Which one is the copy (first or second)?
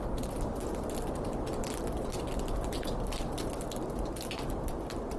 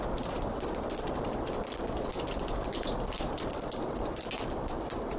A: second